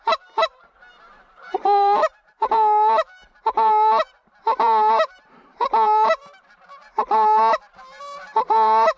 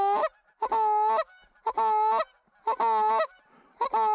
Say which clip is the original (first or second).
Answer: second